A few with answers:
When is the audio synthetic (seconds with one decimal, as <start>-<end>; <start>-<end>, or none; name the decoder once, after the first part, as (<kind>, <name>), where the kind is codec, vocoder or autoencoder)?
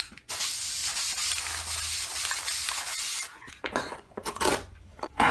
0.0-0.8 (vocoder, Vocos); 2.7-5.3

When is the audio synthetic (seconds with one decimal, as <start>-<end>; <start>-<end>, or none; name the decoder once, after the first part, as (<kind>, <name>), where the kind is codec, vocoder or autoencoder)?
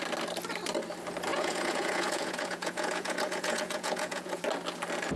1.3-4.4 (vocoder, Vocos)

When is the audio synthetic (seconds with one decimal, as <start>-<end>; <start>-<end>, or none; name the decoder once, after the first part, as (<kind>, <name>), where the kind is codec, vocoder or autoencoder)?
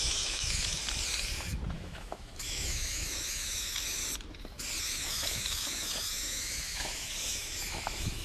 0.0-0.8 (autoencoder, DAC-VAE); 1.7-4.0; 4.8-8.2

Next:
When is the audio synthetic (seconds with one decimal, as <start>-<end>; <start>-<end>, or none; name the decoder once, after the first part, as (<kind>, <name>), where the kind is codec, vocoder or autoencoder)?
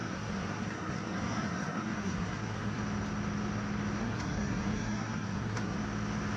0.0-2.8 (codec, SNAC); 4.0-5.8